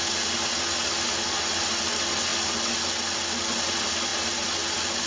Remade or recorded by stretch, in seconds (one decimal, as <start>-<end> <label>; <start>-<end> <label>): 0.0-5.1 recorded